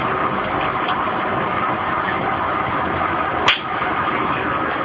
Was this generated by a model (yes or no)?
no